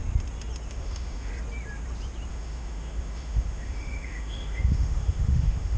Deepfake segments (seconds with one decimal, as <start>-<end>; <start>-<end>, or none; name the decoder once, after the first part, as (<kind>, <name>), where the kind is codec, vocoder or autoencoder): 0.7-1.3 (autoencoder, DAC-VAE); 2.3-5.8